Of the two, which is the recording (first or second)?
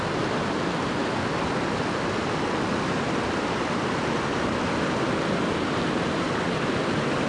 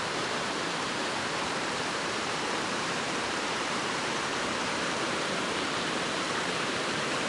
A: first